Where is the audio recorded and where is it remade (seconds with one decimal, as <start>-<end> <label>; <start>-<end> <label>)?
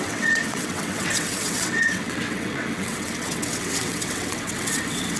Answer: 0.0-5.2 remade